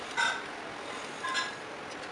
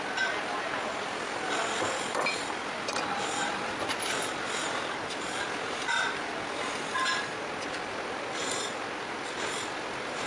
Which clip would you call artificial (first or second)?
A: second